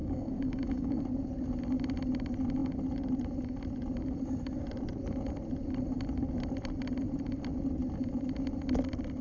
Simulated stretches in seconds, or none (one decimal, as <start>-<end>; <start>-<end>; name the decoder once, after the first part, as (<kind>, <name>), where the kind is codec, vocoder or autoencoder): 0.0-1.0 (codec, DAC)